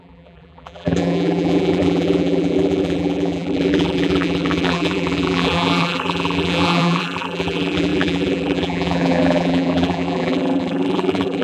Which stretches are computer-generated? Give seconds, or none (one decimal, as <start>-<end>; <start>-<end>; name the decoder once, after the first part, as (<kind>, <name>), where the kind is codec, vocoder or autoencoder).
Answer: 0.0-11.4 (vocoder, BigVGAN v2)